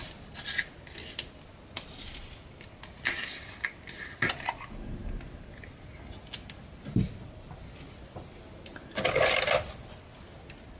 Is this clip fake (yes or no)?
no